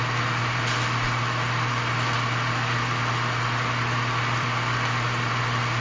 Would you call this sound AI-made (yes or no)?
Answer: no